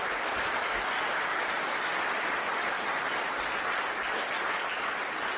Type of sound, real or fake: real